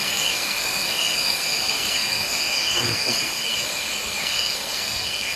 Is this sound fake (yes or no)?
yes